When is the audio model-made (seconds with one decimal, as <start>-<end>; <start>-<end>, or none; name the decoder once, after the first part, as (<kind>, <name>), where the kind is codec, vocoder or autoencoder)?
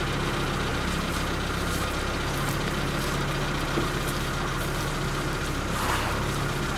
none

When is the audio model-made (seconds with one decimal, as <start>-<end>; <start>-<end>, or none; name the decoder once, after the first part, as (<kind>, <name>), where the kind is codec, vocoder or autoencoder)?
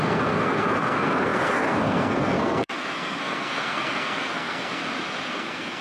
0.0-4.8 (codec, SNAC); 5.3-5.8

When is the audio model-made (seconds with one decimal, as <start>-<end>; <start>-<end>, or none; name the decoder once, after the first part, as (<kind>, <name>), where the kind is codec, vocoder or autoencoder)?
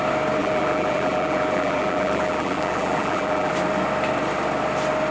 0.4-3.5 (vocoder, BigVGAN v2)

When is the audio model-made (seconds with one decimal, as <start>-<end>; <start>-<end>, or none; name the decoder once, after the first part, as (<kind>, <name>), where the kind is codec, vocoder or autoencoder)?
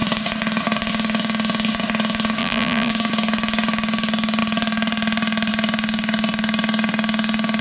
2.4-2.9 (vocoder, BigVGAN v2)